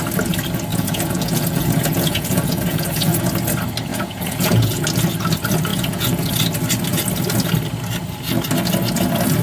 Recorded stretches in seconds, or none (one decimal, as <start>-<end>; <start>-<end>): 0.0-0.7; 3.3-3.9; 4.8-5.7; 6.3-9.4

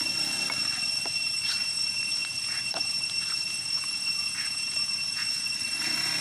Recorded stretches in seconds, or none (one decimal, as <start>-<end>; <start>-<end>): 0.0-1.6; 5.3-6.2

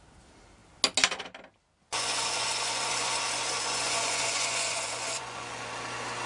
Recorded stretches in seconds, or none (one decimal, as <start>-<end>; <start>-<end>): 0.0-1.9; 5.7-6.3

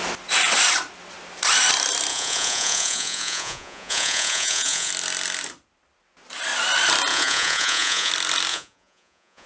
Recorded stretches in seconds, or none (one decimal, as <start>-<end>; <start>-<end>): 0.0-2.1; 4.9-7.1; 8.1-8.5